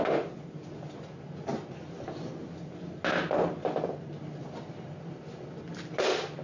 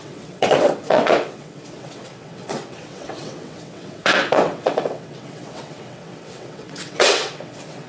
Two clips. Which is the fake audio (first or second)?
second